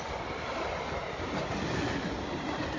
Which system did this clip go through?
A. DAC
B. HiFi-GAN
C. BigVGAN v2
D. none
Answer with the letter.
D